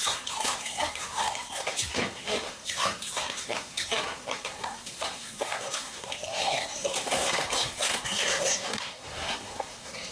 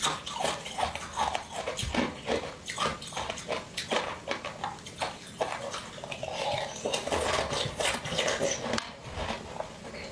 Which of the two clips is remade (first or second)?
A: first